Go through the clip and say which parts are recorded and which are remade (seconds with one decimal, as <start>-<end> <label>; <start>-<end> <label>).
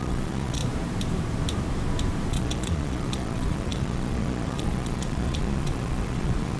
0.0-0.6 remade; 0.6-2.3 recorded; 2.3-6.6 remade